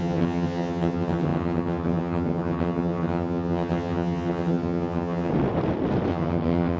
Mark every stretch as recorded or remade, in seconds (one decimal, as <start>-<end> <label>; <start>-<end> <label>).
0.0-5.3 remade; 5.3-6.1 recorded; 6.1-6.8 remade